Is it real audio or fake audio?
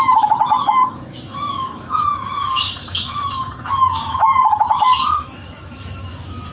fake